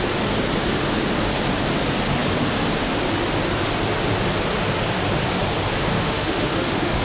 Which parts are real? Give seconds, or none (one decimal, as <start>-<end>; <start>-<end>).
0.0-5.9